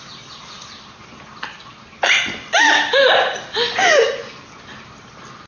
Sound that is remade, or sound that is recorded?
recorded